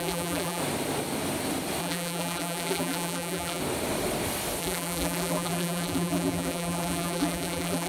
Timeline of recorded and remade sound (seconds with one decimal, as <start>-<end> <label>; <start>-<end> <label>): 0.0-0.6 remade; 0.6-1.8 recorded; 1.8-3.6 remade; 3.6-4.6 recorded; 4.6-7.9 remade